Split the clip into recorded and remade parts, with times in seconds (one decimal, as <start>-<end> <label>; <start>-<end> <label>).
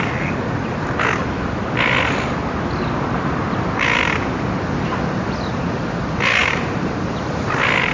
0.0-6.4 recorded; 6.4-6.9 remade; 6.9-7.9 recorded